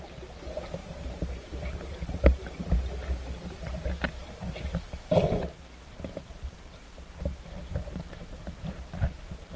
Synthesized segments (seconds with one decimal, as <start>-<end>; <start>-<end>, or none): 0.8-2.8; 4.2-9.6